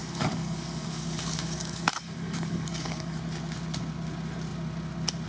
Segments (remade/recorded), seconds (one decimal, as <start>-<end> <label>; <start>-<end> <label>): 0.0-3.2 remade; 3.2-5.3 recorded